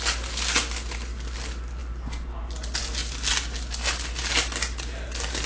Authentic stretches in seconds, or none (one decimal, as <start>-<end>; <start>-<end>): 0.0-5.5